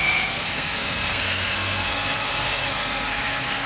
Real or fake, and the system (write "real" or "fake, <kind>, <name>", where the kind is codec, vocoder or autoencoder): fake, codec, SNAC